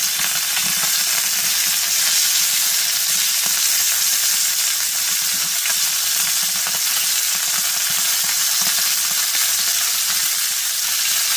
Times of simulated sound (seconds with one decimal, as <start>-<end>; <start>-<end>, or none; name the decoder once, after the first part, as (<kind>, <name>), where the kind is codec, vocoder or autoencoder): 0.6-4.3 (vocoder, BigVGAN v2)